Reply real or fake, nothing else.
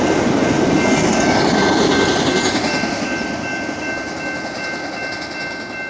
real